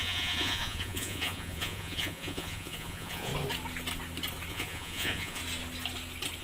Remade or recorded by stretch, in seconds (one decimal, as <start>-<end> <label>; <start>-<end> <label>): 0.0-3.3 remade; 3.3-4.5 recorded; 4.5-5.4 remade; 5.4-6.4 recorded

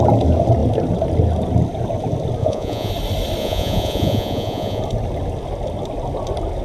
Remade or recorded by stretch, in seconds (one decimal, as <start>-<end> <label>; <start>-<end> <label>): 0.0-2.4 recorded; 2.4-2.9 remade; 2.9-3.4 recorded; 3.4-4.8 remade; 4.8-6.6 recorded

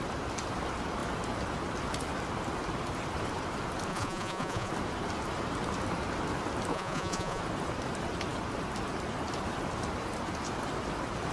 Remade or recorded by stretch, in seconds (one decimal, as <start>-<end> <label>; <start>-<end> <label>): 0.0-3.9 recorded; 3.9-4.7 remade; 4.7-6.7 recorded; 6.7-7.4 remade; 7.4-11.3 recorded

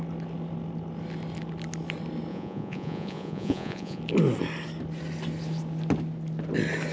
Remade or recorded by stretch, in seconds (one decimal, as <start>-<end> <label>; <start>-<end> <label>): 0.0-2.3 recorded; 2.3-4.0 remade; 4.0-6.9 recorded